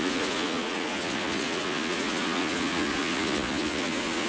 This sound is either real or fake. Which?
fake